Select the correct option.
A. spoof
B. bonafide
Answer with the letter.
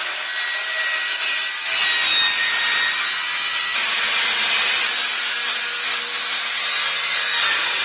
B